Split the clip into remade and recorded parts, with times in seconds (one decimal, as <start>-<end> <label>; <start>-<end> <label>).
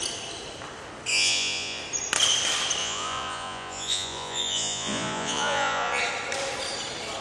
0.0-1.1 recorded; 1.1-1.8 remade; 1.8-2.8 recorded; 2.8-6.0 remade; 6.0-7.2 recorded